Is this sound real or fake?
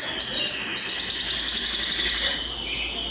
real